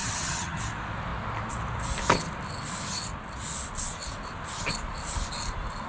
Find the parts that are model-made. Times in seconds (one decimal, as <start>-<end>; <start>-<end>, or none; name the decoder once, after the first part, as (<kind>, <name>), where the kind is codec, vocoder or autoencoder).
0.0-0.6 (vocoder, HiFi-GAN)